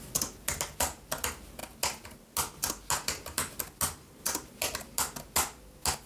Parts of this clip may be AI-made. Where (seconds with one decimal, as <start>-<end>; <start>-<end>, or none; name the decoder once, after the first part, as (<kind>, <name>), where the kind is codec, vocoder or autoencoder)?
none